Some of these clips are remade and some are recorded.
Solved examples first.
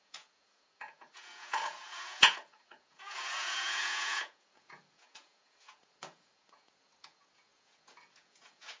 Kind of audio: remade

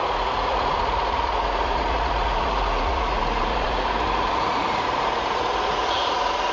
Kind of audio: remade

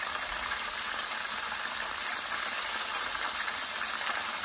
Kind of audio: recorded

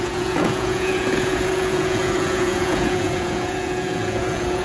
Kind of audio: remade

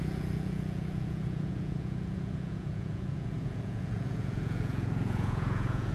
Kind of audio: remade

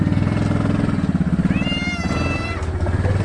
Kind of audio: recorded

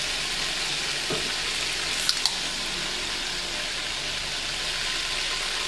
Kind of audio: recorded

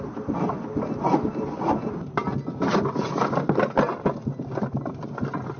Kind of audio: recorded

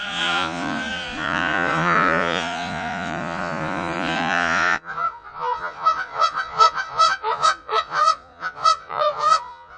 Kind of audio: remade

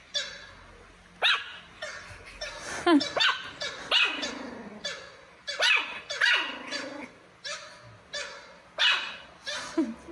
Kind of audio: recorded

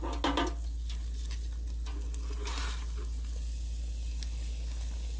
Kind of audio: recorded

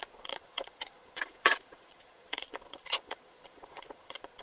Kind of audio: remade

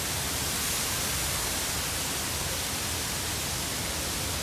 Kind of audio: recorded